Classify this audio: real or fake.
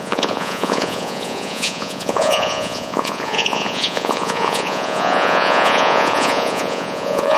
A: fake